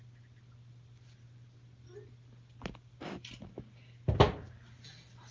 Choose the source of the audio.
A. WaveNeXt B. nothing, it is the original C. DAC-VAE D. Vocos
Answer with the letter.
B